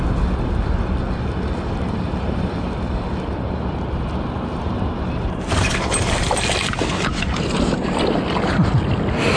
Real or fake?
real